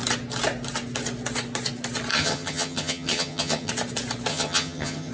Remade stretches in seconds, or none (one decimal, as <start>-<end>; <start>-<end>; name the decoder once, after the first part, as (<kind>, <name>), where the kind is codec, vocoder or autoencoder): 2.1-3.7 (vocoder, HiFi-GAN); 4.3-5.1